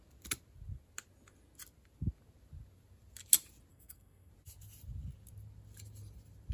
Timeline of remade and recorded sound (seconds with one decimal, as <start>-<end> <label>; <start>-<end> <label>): 0.0-3.7 recorded; 3.7-4.3 remade; 4.3-6.5 recorded